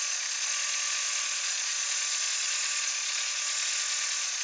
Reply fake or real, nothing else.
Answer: fake